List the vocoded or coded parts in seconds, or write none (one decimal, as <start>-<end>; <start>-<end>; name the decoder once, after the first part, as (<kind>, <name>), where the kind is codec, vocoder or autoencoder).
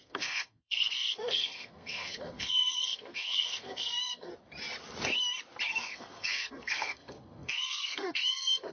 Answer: 0.0-4.3 (codec, SNAC); 5.7-8.7